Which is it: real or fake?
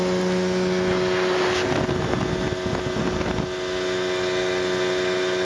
real